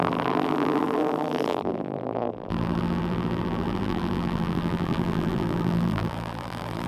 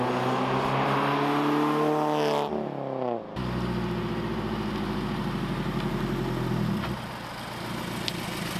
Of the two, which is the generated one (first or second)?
first